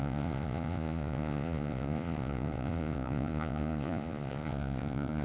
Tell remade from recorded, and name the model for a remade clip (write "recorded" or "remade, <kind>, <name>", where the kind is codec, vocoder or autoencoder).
remade, vocoder, Vocos